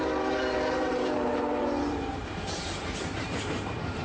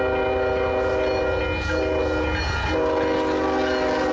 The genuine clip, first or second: second